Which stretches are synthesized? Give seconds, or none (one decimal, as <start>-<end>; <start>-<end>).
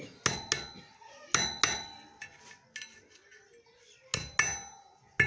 none